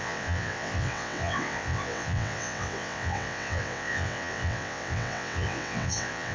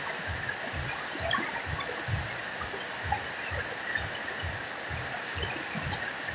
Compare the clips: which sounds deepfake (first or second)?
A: first